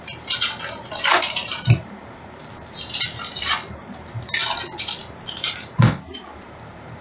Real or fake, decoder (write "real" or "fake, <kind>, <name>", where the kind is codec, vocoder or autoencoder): fake, vocoder, BigVGAN v2